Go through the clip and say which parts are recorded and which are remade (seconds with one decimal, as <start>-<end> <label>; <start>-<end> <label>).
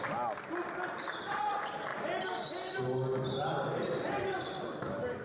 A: 0.0-5.2 recorded